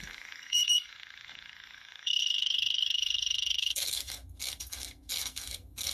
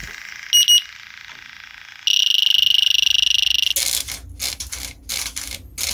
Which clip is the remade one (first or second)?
first